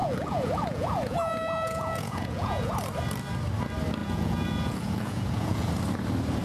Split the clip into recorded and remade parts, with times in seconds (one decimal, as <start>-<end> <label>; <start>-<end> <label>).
0.0-2.7 remade; 2.7-4.0 recorded; 4.0-5.7 remade; 5.7-6.4 recorded